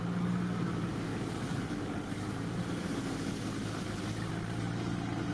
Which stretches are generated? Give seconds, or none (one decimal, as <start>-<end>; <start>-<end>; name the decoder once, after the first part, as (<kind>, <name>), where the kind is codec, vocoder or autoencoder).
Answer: none